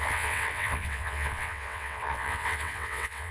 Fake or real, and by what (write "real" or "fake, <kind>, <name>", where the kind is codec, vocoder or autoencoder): fake, vocoder, WaveNeXt